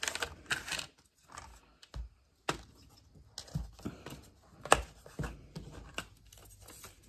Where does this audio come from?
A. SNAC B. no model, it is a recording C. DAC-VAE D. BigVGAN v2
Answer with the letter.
B